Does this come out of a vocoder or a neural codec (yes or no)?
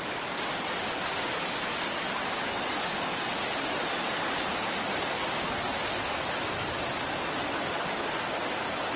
no